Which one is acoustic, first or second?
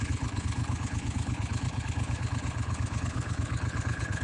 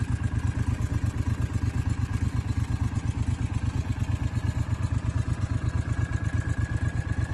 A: second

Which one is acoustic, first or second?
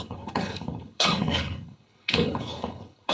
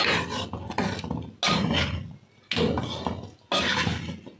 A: second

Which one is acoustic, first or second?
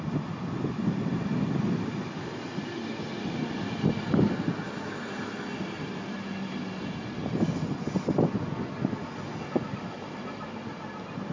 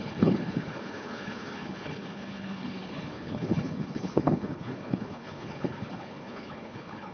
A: first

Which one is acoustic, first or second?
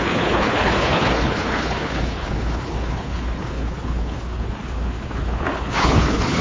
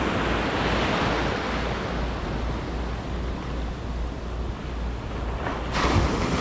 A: second